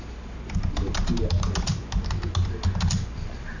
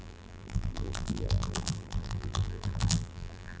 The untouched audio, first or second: first